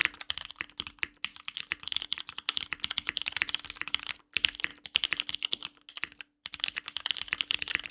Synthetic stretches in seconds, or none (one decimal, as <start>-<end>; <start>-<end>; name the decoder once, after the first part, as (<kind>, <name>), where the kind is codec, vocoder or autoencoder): none